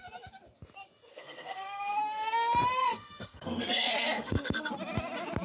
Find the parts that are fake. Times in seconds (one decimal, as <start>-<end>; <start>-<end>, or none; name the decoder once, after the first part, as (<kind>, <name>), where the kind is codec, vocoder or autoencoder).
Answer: 1.1-2.0 (codec, SNAC); 2.8-4.7

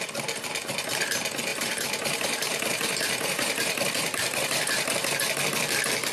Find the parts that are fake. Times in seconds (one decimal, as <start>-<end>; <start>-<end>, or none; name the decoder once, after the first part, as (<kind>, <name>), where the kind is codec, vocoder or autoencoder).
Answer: 1.5-5.2 (vocoder, BigVGAN v2)

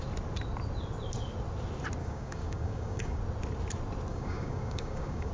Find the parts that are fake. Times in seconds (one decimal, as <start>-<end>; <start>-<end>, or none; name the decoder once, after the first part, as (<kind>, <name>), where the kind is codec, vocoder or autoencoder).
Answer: 2.0-3.2 (codec, DAC); 4.1-5.3

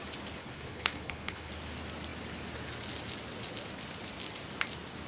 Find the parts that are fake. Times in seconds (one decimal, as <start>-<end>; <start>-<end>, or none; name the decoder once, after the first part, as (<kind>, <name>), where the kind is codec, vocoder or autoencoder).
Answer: 0.4-1.5 (codec, HILCodec)

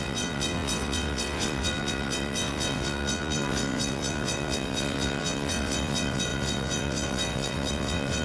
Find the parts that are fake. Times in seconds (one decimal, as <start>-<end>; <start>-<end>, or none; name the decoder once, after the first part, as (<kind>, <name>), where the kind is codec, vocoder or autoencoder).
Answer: 0.0-8.2 (vocoder, WaveNeXt)